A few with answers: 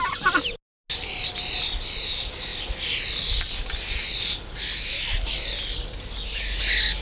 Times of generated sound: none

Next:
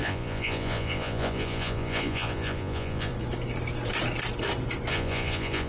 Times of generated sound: 0.0-3.1 (vocoder, Vocos); 4.9-5.7

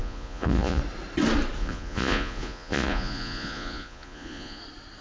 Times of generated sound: 0.0-0.8 (vocoder, Vocos); 1.6-4.6

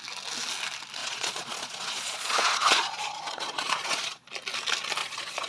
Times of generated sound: 1.0-4.3 (vocoder, Vocos); 5.0-5.5